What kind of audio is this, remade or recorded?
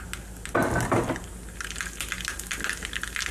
recorded